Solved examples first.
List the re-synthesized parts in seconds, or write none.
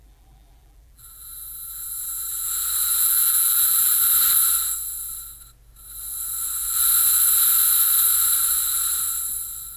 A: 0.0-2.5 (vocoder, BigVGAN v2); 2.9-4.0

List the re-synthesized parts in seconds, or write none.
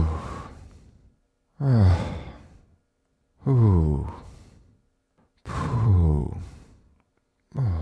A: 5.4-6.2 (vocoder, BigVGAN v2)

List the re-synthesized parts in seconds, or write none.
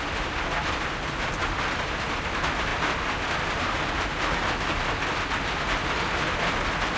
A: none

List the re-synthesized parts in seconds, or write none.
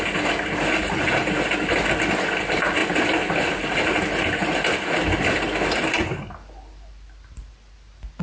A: none